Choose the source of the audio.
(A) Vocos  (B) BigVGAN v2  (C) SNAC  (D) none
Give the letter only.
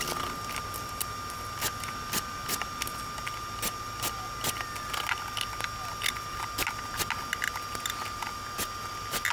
D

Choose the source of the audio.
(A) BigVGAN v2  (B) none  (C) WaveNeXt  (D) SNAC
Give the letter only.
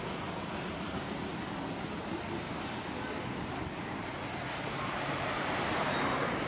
B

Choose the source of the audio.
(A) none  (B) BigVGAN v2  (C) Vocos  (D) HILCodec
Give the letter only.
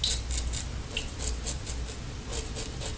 A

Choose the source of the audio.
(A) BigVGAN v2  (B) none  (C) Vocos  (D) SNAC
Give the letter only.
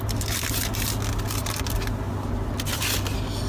B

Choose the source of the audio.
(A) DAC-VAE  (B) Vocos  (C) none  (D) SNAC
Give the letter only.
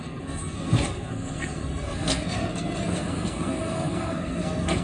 D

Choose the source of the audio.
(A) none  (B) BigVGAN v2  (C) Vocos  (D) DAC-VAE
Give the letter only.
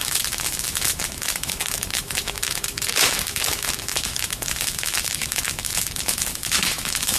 D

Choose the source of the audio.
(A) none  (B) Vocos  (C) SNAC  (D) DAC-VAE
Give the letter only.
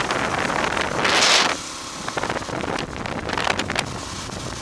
A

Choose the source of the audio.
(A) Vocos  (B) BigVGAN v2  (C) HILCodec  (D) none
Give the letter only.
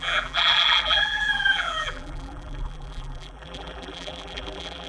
B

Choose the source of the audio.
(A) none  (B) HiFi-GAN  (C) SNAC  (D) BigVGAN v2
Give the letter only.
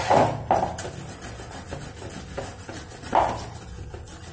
A